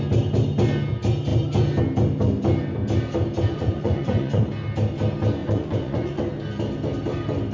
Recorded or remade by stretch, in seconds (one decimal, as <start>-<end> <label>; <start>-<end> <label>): 0.0-3.5 recorded; 3.5-4.4 remade; 4.4-5.4 recorded; 5.4-6.2 remade; 6.2-7.5 recorded